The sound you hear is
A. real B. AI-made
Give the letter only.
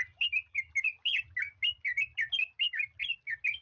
A